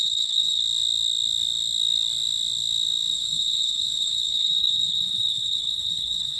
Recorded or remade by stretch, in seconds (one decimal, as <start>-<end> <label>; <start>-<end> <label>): 0.0-0.6 remade; 0.6-3.1 recorded; 3.1-6.4 remade